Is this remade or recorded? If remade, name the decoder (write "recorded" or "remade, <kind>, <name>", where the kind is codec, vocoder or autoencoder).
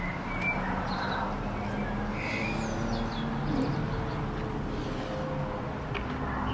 recorded